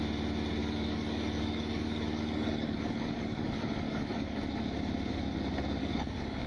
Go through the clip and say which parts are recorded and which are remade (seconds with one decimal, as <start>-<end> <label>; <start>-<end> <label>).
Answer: 0.0-0.6 recorded; 0.6-4.4 remade; 4.4-5.8 recorded; 5.8-6.5 remade